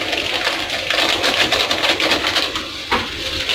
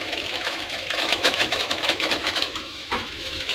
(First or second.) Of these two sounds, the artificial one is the second